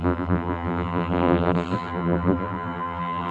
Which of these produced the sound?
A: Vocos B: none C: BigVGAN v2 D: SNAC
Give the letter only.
C